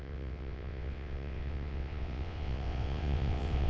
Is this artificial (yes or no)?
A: yes